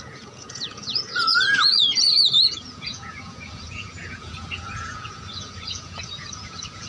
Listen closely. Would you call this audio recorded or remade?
remade